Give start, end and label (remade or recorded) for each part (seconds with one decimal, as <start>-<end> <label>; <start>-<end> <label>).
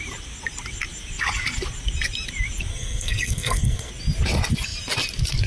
0.0-2.7 recorded; 2.7-3.9 remade; 3.9-5.5 recorded